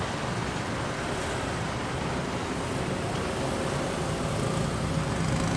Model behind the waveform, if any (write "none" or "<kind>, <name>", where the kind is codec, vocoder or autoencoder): none